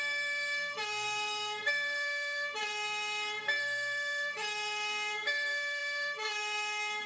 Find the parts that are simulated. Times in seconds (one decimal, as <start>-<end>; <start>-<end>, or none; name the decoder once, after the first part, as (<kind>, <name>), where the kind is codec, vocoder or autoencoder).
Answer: 0.0-7.1 (codec, SNAC)